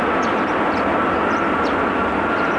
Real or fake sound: real